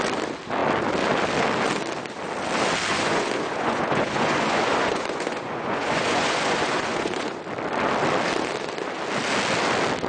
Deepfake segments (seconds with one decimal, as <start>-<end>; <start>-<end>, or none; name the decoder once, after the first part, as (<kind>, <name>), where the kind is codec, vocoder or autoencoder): 2.9-7.4 (vocoder, Vocos)